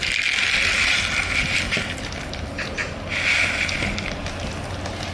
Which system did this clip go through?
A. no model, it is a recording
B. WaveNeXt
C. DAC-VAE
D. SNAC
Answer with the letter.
A